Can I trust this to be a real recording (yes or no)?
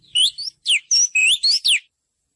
yes